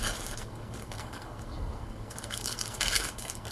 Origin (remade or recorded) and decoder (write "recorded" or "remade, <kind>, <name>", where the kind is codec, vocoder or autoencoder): remade, codec, SNAC